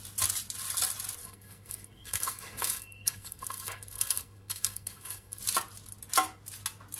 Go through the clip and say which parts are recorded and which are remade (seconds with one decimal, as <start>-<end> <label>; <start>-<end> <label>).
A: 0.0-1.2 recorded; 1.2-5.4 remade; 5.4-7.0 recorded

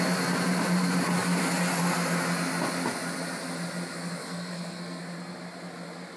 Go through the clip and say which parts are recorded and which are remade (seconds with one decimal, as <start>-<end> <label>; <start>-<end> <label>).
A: 0.0-4.2 recorded; 4.2-5.0 remade; 5.0-6.2 recorded

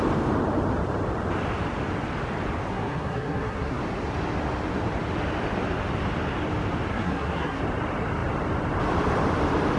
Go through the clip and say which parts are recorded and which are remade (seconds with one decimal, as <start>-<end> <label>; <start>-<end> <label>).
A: 0.0-2.7 recorded; 2.7-3.8 remade; 3.8-6.9 recorded; 6.9-7.6 remade; 7.6-9.8 recorded

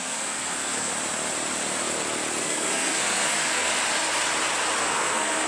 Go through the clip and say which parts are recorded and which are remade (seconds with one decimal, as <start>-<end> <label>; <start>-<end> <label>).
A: 0.0-0.9 remade; 0.9-2.4 recorded; 2.4-3.7 remade; 3.7-4.8 recorded; 4.8-5.5 remade

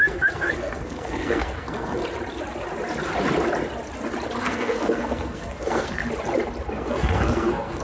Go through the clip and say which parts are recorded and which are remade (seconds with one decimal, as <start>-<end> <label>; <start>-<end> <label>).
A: 0.0-2.0 remade; 2.0-4.4 recorded; 4.4-6.0 remade; 6.0-6.7 recorded; 6.7-7.8 remade